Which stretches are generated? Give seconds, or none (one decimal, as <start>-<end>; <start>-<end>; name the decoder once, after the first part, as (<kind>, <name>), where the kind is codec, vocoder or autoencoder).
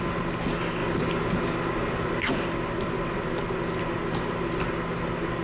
none